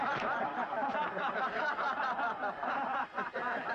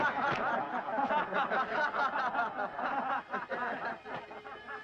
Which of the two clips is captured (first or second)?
second